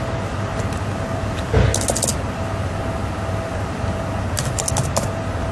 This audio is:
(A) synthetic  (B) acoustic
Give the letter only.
B